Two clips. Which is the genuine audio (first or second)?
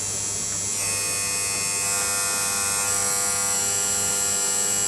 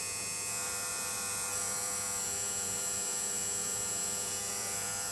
first